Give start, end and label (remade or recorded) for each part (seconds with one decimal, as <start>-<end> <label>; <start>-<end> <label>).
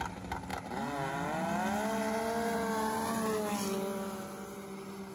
0.0-5.1 recorded